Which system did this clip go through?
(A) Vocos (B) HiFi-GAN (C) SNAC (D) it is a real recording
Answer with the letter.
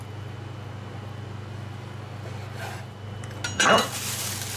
D